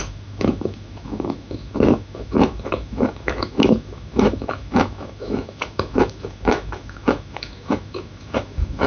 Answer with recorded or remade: remade